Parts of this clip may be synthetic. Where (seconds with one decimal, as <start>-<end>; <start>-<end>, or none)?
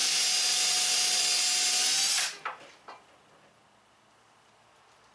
none